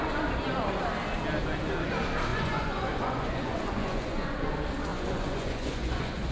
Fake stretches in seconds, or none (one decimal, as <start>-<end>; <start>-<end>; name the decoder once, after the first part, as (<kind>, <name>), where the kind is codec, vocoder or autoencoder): 2.3-4.5 (vocoder, Vocos); 4.9-6.3